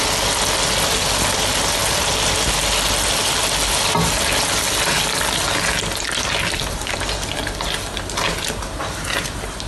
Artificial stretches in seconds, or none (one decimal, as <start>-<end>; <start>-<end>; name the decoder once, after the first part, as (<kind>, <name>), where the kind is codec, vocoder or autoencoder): none